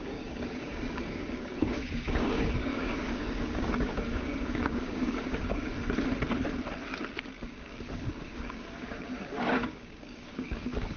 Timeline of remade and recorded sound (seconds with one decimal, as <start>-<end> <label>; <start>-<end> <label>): 0.0-5.7 remade; 5.7-7.4 recorded; 7.4-11.0 remade